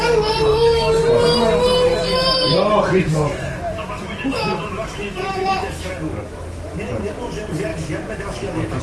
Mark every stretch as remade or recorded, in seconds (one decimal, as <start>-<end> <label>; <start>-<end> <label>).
0.0-0.5 recorded; 0.5-1.0 remade; 1.0-1.9 recorded; 1.9-6.8 remade; 6.8-7.7 recorded; 7.7-8.8 remade